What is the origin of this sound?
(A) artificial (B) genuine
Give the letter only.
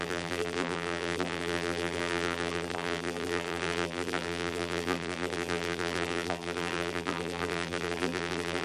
A